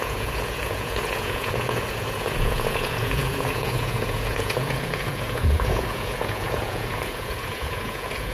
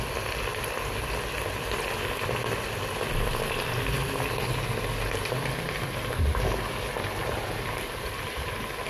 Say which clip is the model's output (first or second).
first